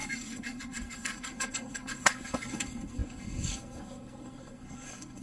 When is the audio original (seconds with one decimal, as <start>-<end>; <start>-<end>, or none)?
none

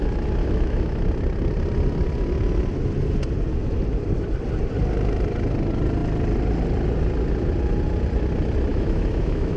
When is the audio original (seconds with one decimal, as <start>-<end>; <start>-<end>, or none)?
0.0-0.4; 1.0-8.7

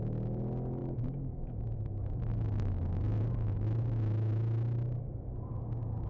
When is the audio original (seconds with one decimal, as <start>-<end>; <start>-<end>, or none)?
0.0-0.8; 3.8-6.1

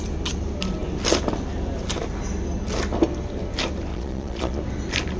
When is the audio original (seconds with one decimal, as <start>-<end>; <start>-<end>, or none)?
0.0-3.9; 4.6-5.2

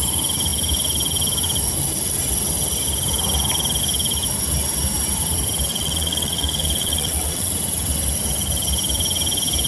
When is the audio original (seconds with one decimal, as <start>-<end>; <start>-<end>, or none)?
0.0-5.7; 7.5-9.7

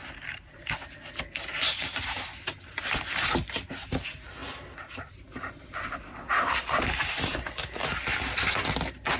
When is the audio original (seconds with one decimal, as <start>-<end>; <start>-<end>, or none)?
0.0-9.2

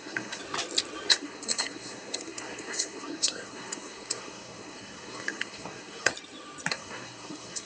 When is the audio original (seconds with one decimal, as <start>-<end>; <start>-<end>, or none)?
0.4-1.1; 6.1-6.7